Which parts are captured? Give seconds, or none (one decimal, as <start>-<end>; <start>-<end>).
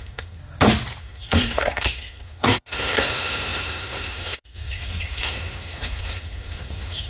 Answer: 0.4-1.0